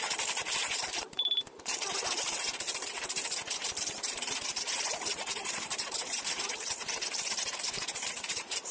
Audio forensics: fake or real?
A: fake